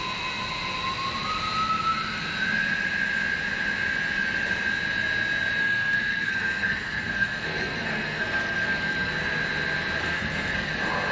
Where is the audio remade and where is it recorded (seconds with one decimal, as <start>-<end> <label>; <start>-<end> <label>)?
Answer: 0.0-5.6 recorded; 5.6-9.1 remade; 9.1-10.0 recorded; 10.0-10.7 remade; 10.7-11.1 recorded